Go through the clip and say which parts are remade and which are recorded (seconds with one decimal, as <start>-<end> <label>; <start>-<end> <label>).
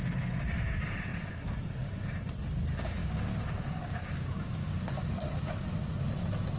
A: 0.0-3.0 recorded; 3.0-5.1 remade; 5.1-6.6 recorded